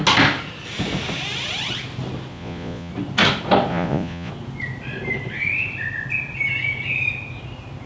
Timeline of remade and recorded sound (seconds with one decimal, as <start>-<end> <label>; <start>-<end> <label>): 0.0-2.3 recorded; 2.3-2.9 remade; 2.9-3.7 recorded; 3.7-4.3 remade; 4.3-7.9 recorded